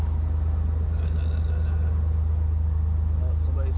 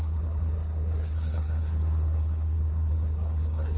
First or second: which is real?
first